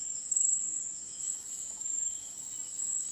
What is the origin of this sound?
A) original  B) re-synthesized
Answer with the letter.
B